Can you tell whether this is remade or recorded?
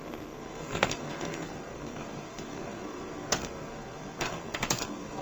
remade